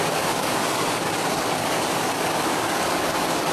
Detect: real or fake fake